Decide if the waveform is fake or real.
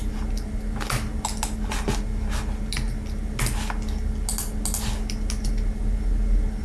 real